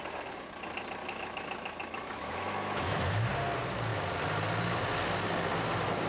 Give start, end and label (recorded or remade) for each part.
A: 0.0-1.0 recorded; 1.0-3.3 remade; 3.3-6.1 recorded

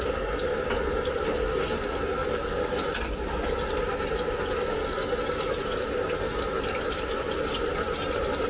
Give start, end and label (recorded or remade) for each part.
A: 0.0-2.2 recorded; 2.2-2.7 remade; 2.7-8.5 recorded

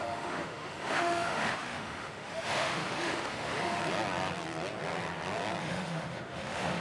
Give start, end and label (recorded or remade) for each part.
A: 0.0-3.8 remade; 3.8-5.6 recorded; 5.6-6.8 remade